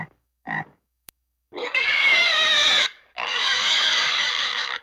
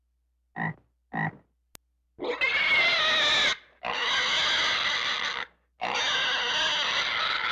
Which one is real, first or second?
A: second